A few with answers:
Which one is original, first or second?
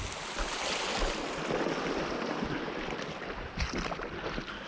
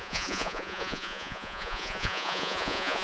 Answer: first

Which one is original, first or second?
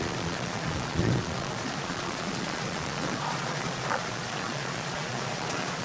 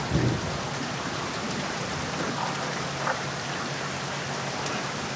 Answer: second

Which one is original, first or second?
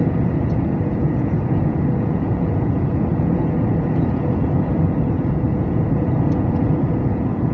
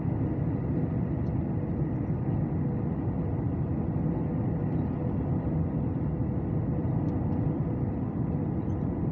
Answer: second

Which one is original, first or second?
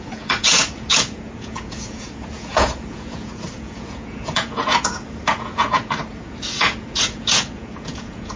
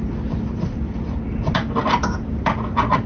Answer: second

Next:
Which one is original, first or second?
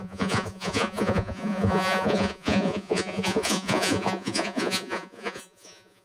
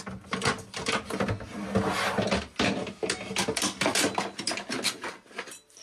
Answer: second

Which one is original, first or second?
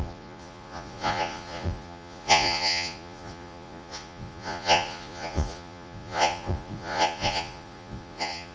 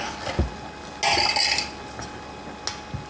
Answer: second